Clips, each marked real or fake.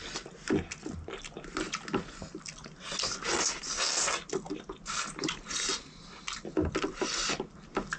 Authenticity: real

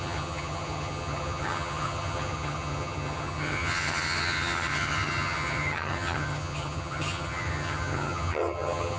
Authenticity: fake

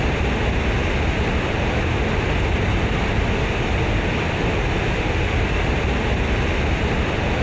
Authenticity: real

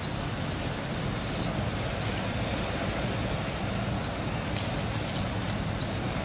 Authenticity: real